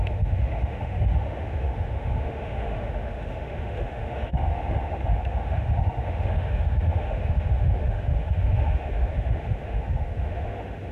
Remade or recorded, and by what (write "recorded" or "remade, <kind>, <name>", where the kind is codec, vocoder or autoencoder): remade, autoencoder, DAC-VAE